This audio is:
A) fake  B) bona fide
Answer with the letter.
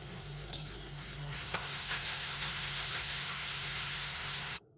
A